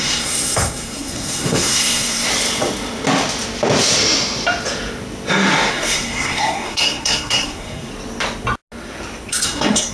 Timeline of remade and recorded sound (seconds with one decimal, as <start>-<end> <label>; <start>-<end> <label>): 0.0-2.3 remade; 2.3-5.7 recorded; 5.7-7.9 remade; 7.9-9.3 recorded; 9.3-9.9 remade